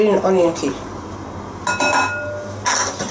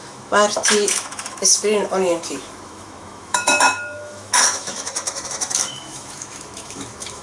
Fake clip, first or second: second